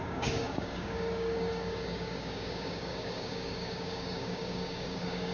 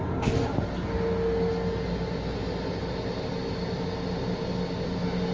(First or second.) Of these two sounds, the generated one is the first